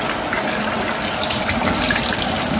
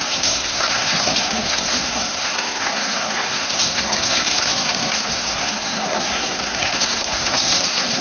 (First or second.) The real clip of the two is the first